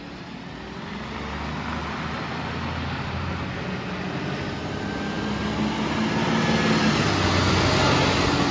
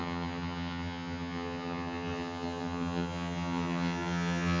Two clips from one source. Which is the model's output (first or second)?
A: second